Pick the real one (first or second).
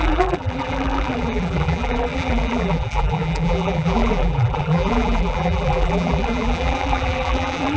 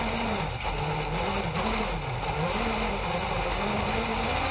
second